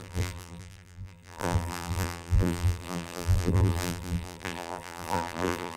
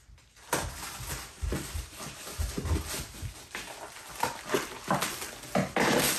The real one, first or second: second